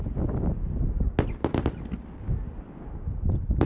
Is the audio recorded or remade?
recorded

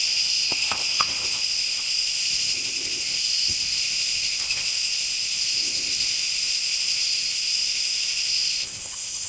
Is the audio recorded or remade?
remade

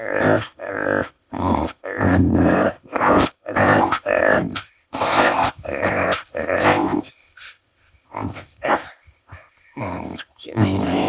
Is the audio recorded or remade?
remade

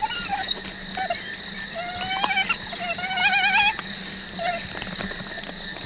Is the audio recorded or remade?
recorded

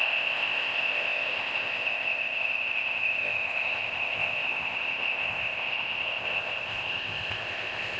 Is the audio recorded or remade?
remade